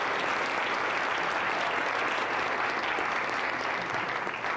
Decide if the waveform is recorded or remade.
recorded